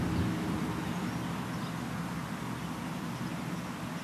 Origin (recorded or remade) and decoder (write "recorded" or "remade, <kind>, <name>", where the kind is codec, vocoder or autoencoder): recorded